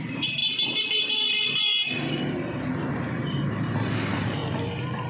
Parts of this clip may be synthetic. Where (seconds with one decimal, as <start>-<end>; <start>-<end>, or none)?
0.0-0.4; 3.5-4.4